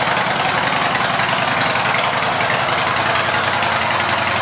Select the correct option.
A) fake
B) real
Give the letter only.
B